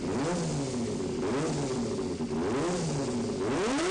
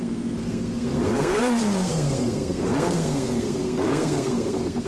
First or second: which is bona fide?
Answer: first